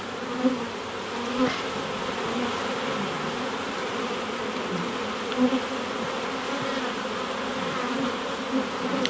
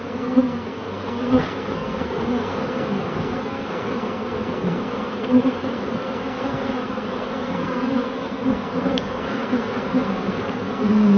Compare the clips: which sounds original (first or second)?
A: first